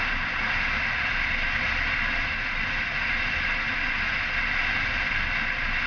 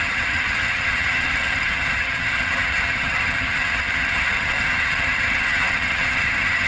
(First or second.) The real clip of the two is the first